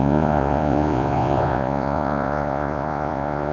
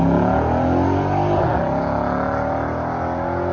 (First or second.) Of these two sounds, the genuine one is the second